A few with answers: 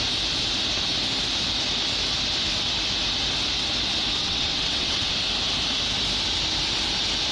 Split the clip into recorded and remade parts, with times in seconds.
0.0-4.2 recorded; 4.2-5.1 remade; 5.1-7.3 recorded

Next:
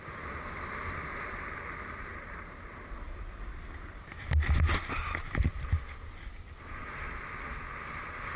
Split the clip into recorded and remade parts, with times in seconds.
0.0-2.1 recorded; 2.1-3.6 remade; 3.6-8.4 recorded